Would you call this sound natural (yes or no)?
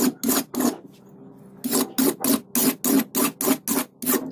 yes